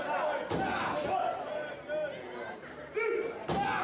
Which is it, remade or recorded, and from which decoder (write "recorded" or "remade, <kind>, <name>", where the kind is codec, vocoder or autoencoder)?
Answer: recorded